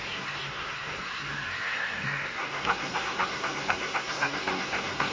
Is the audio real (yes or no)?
no